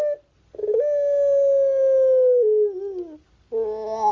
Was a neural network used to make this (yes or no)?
no